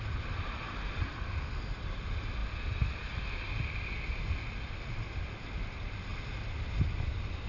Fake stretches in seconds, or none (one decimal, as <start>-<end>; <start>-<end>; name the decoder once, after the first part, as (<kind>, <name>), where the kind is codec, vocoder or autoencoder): none